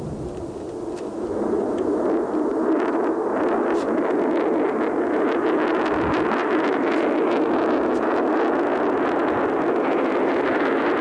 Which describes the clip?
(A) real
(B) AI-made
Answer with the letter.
A